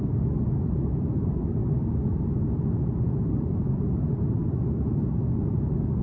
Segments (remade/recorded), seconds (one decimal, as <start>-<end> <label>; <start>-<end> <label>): 0.0-6.0 recorded